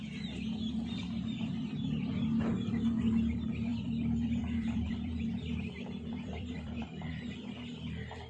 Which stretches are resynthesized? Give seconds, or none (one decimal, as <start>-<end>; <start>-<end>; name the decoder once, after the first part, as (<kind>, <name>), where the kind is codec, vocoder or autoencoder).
3.7-7.1 (vocoder, BigVGAN v2)